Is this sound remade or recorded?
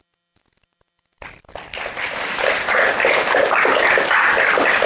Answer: recorded